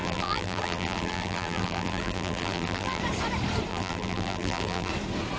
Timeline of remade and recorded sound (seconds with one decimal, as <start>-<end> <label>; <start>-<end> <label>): 0.0-3.0 remade; 3.0-3.7 recorded; 3.7-4.9 remade; 4.9-5.4 recorded